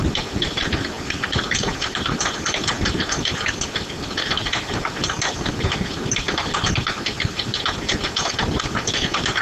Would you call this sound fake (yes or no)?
yes